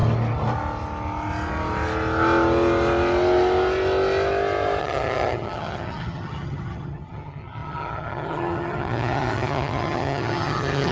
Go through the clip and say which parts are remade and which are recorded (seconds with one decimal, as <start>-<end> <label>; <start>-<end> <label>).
0.0-4.8 recorded; 4.8-10.9 remade